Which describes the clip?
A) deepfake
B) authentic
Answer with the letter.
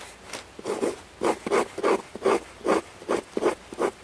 B